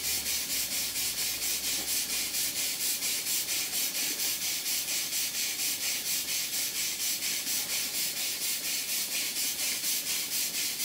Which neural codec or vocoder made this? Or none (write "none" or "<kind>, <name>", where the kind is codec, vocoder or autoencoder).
none